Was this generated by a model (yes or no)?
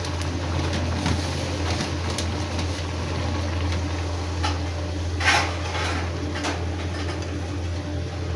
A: no